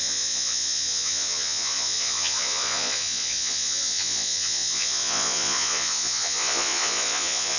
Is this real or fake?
fake